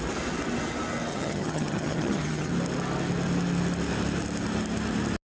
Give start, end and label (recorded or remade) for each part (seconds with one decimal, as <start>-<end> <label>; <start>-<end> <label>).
0.0-1.1 recorded; 1.1-2.5 remade; 2.5-5.2 recorded